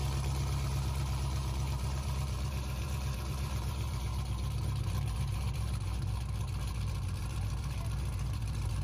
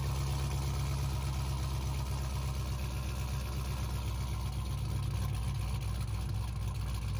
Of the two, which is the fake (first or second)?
first